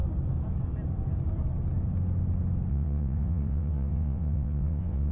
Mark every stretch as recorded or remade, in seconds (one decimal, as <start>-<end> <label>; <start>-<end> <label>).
0.0-2.7 recorded; 2.7-5.1 remade